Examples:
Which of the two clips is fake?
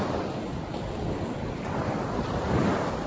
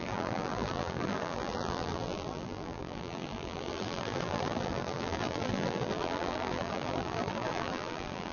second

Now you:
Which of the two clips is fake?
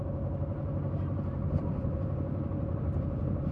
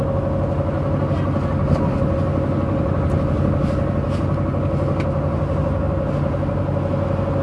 first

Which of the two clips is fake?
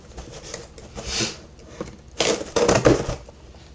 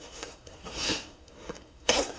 second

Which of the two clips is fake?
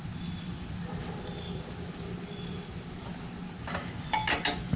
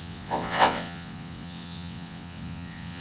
second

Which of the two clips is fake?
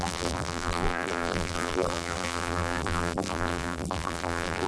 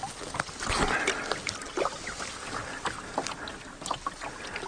first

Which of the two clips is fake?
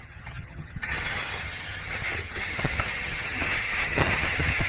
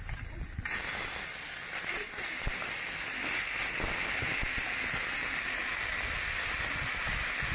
first